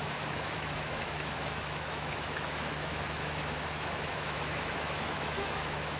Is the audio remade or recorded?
remade